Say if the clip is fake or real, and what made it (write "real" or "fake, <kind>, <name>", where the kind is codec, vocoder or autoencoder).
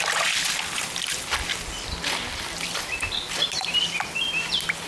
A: real